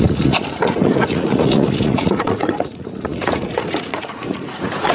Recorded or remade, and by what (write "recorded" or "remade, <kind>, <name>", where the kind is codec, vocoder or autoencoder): remade, vocoder, Vocos